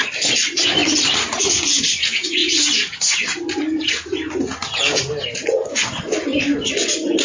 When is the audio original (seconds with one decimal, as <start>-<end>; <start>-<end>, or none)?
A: 0.0-0.8; 1.8-7.2